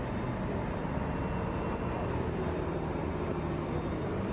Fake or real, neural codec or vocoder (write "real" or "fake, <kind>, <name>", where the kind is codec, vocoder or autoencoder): real